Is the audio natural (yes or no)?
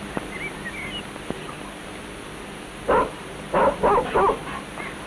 yes